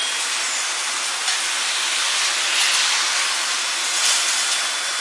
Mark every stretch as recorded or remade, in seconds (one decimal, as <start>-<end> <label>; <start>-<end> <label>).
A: 0.0-5.0 recorded